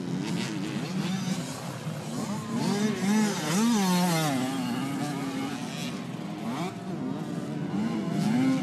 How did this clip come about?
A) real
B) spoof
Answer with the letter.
A